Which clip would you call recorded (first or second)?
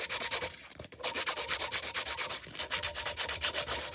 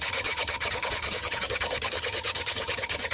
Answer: first